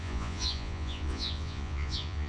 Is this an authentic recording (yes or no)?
no